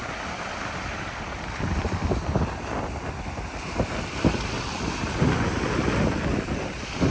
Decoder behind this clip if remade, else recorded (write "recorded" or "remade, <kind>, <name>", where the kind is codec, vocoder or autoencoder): recorded